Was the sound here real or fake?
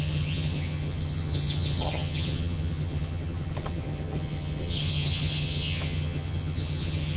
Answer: fake